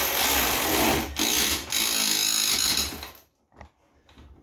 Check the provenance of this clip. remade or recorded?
recorded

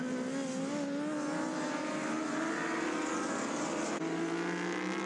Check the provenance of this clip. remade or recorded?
recorded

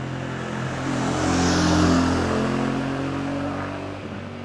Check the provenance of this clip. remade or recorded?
recorded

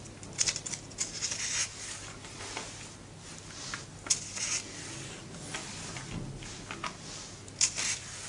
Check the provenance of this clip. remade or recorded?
recorded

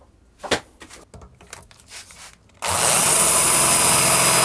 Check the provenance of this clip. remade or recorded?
recorded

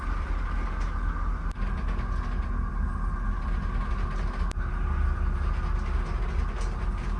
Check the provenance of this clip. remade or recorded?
recorded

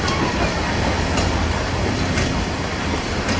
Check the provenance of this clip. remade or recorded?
recorded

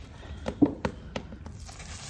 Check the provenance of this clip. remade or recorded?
recorded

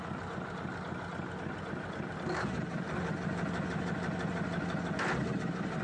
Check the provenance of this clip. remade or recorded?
recorded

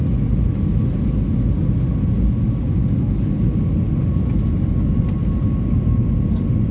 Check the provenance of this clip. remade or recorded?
recorded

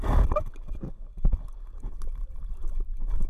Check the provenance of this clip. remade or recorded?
recorded